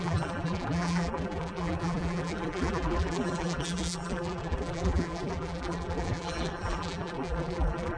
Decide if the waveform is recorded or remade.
remade